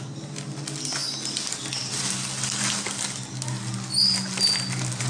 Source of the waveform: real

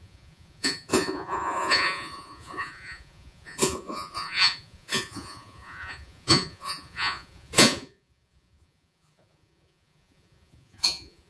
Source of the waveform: fake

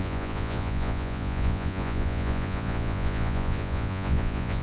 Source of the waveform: fake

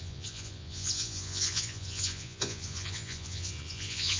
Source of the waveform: fake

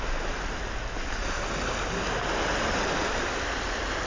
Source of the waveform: real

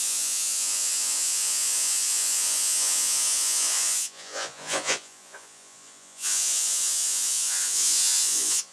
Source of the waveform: fake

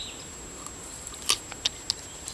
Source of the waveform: real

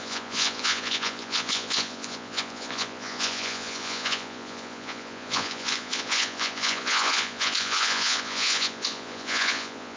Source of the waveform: fake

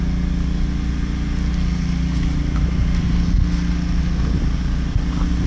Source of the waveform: real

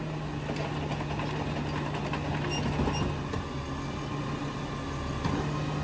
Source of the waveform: real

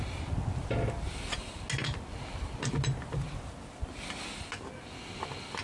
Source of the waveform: real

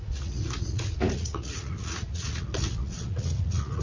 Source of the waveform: fake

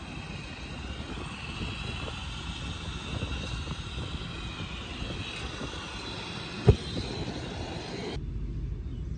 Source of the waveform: real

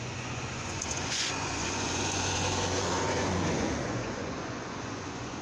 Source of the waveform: fake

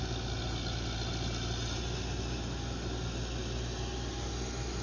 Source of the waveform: real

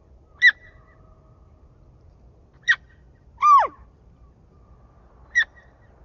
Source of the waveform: real